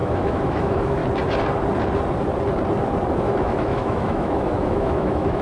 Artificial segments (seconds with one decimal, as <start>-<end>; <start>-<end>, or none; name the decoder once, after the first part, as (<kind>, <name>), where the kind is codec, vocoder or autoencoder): 0.0-1.0 (autoencoder, DAC-VAE); 3.2-5.4